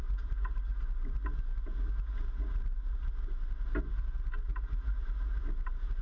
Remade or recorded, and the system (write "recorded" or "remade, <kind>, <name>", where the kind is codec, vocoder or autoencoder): recorded